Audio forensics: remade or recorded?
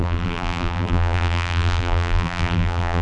remade